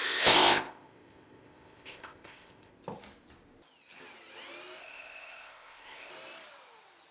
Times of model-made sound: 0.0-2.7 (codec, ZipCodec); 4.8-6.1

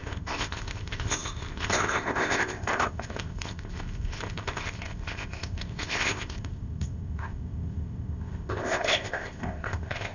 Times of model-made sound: 0.0-10.1 (codec, ZipCodec)

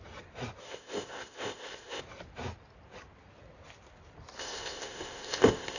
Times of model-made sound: 0.6-2.0 (codec, ZipCodec); 4.4-5.8

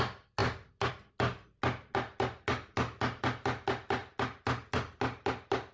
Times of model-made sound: none

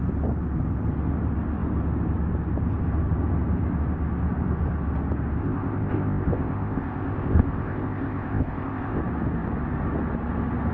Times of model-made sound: 5.4-9.0 (codec, ZipCodec)

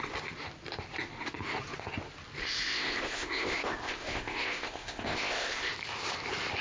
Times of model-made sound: 2.4-5.7 (codec, ZipCodec)